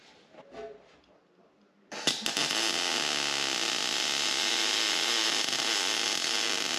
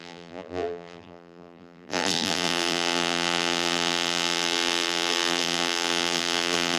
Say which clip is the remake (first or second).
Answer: second